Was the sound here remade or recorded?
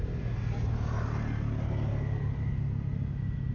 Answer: recorded